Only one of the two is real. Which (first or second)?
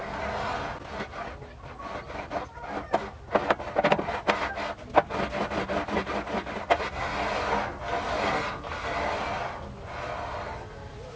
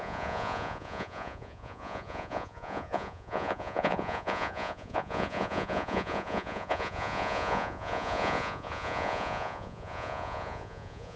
first